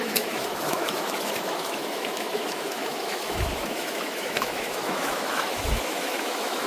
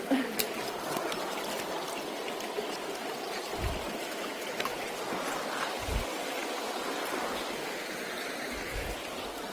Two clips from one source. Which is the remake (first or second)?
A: first